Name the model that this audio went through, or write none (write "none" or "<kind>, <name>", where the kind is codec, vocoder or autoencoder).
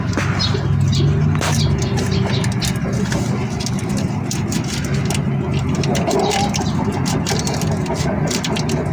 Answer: none